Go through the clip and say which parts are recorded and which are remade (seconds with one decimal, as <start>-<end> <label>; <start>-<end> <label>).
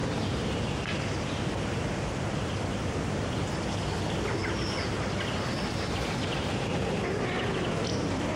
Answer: 0.0-8.4 recorded